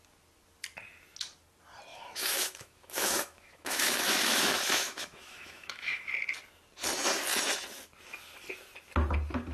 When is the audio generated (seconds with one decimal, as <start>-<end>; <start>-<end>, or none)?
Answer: 1.9-6.1